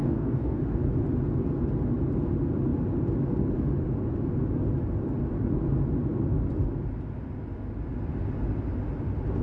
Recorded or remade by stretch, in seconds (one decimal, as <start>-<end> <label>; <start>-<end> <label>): 0.0-0.6 remade; 0.6-9.4 recorded